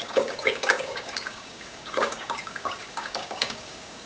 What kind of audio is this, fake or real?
fake